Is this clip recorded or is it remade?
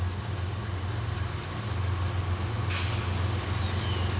recorded